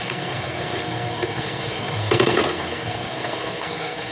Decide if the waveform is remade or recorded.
remade